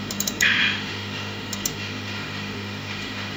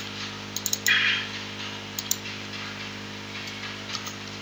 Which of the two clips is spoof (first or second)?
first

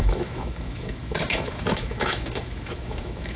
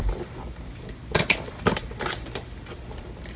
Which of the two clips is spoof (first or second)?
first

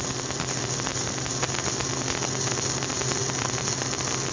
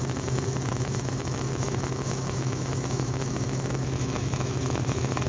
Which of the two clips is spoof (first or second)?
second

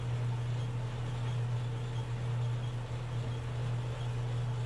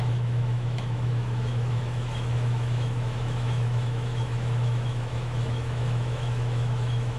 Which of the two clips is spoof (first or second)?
second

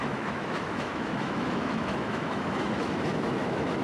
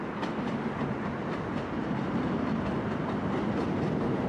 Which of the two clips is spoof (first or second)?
first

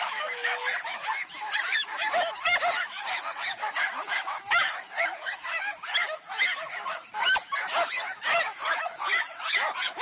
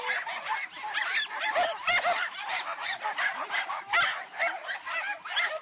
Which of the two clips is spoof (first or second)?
first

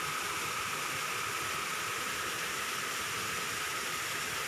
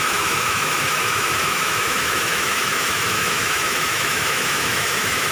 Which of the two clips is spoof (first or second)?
second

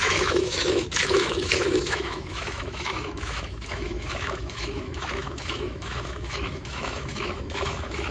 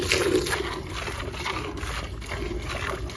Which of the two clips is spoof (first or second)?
first